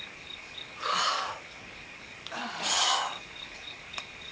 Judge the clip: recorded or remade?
remade